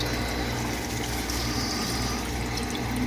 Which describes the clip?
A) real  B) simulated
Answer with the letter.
A